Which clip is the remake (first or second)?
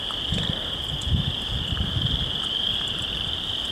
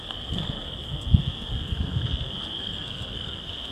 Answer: second